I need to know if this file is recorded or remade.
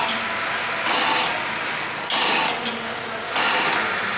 recorded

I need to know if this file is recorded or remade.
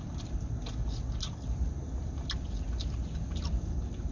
recorded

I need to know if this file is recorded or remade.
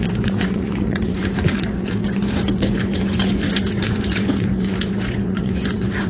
remade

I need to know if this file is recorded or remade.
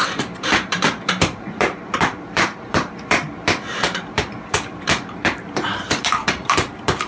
remade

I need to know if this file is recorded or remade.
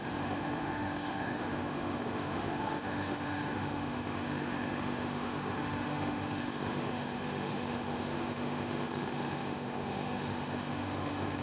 remade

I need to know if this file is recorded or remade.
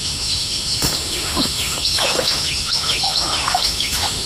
remade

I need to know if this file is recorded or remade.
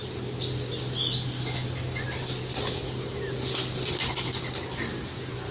recorded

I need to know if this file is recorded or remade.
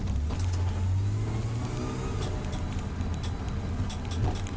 recorded